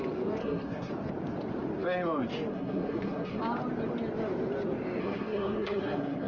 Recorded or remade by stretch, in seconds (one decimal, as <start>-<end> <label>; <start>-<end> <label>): 0.0-0.4 recorded; 0.4-0.9 remade; 0.9-2.5 recorded; 2.5-3.4 remade; 3.4-5.0 recorded; 5.0-6.3 remade